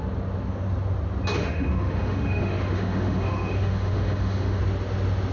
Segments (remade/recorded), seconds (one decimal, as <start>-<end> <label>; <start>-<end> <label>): 0.0-1.4 recorded; 1.4-4.6 remade; 4.6-5.3 recorded

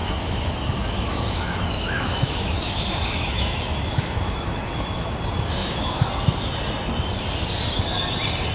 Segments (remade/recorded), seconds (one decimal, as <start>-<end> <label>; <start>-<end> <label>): 0.0-5.1 remade; 5.1-5.6 recorded; 5.6-6.1 remade; 6.1-8.5 recorded